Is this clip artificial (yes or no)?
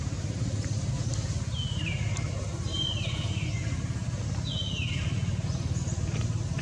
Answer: no